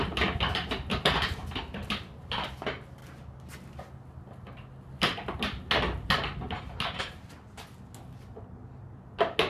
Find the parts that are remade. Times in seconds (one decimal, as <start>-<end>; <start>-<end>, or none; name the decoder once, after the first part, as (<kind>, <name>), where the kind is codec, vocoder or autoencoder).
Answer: none